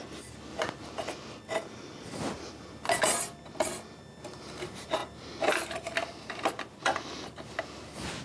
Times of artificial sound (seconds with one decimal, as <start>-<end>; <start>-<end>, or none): none